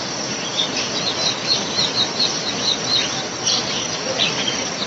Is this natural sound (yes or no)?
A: yes